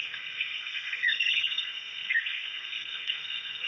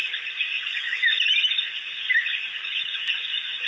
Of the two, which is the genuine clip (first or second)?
second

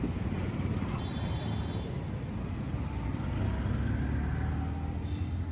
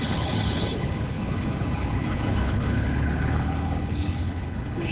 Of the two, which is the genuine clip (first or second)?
first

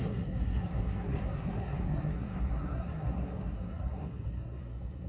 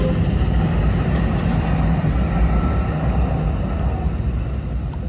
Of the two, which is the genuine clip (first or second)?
second